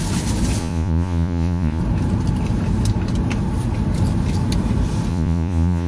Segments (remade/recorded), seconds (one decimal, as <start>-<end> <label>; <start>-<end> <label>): 0.0-0.6 recorded; 0.6-1.8 remade; 1.8-5.1 recorded; 5.1-5.9 remade